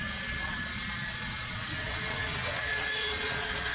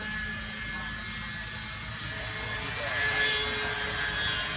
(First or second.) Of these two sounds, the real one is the second